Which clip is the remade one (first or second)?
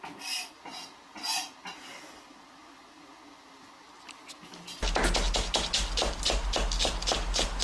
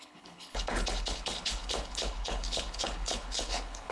second